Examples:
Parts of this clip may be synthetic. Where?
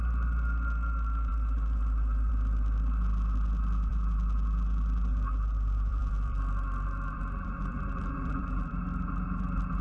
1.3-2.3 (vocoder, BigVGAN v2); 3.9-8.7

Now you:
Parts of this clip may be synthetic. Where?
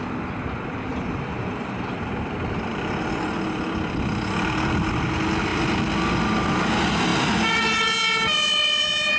0.9-2.6 (vocoder, BigVGAN v2)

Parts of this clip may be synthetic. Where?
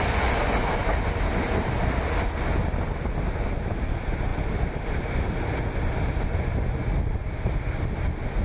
none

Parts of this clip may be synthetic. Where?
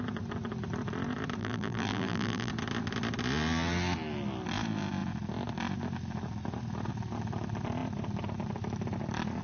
1.4-2.5 (vocoder, BigVGAN v2)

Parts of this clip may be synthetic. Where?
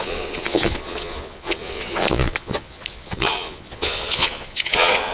0.0-5.1 (vocoder, Vocos)